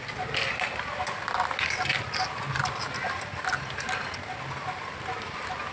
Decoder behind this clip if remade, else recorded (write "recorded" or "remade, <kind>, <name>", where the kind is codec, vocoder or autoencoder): recorded